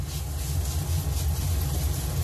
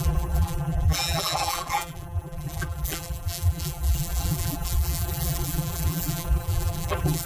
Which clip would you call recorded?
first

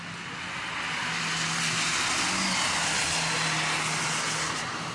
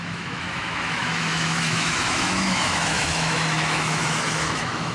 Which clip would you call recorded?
first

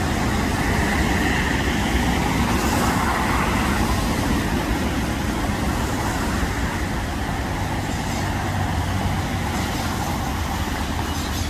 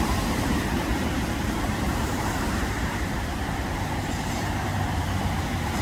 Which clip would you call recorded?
first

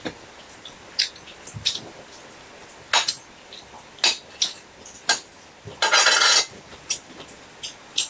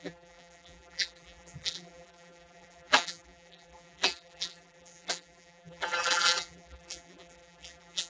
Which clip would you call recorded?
first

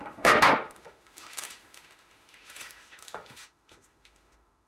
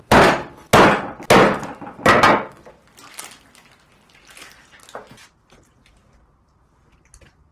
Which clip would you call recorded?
second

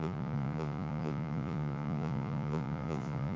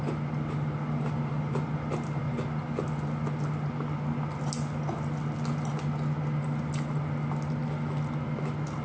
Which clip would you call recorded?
second